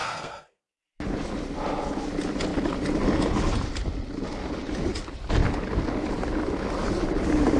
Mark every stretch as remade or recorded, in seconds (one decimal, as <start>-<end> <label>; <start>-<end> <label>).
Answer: 0.0-0.7 remade; 0.7-7.6 recorded